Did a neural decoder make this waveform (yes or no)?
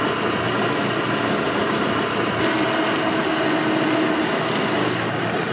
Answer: no